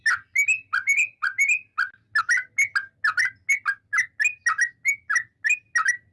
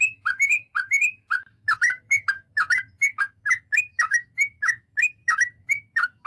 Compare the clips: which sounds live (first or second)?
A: first